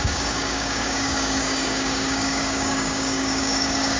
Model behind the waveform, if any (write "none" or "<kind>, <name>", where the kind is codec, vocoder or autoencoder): codec, DAC